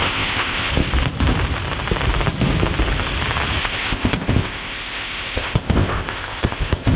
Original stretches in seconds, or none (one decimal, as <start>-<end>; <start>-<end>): 0.7-3.6